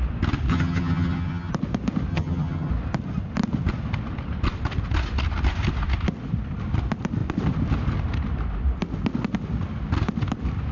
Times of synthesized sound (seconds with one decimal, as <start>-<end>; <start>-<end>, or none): 0.5-1.5; 2.1-2.7